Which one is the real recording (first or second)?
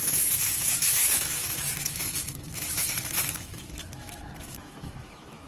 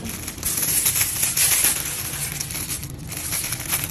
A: second